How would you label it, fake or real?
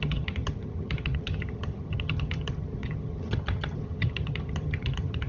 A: fake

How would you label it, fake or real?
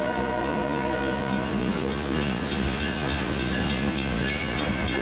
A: fake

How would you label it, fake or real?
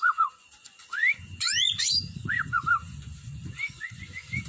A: fake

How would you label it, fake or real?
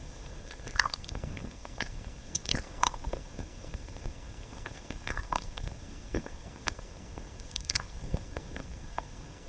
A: fake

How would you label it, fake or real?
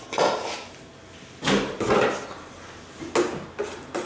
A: real